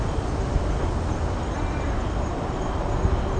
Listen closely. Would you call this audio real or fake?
real